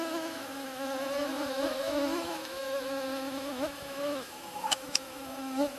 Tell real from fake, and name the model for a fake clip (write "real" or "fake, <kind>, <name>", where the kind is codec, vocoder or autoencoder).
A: fake, autoencoder, DAC-VAE